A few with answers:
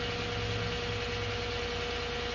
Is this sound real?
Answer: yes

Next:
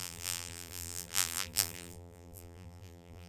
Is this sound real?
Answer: no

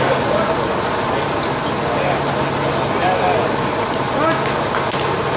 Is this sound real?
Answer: yes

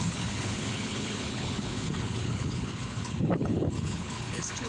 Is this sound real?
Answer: no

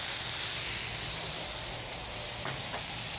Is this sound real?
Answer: yes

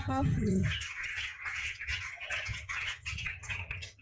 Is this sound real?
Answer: no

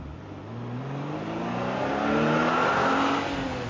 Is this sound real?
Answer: yes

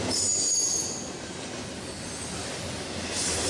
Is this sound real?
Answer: yes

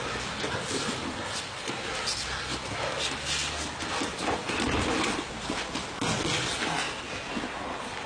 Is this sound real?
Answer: yes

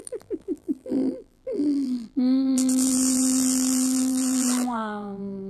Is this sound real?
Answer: no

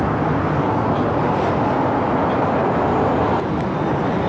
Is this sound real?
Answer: yes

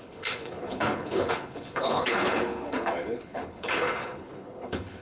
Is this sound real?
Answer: no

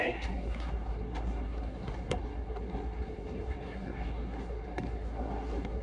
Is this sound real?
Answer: no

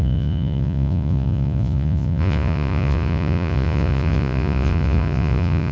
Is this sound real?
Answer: no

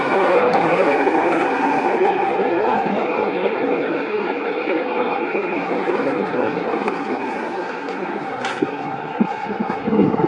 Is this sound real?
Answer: no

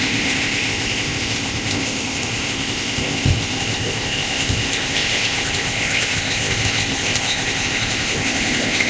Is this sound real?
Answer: no